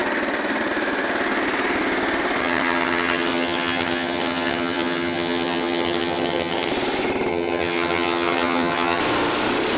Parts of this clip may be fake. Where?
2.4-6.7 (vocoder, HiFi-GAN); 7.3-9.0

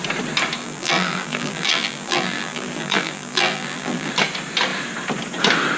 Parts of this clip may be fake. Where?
0.6-4.1 (vocoder, BigVGAN v2)

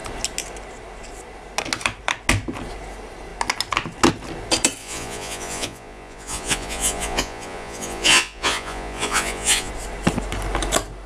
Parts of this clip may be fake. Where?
4.8-9.7 (vocoder, Vocos)